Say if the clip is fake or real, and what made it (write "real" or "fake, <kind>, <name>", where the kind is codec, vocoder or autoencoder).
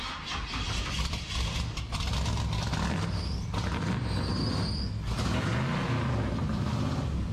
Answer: real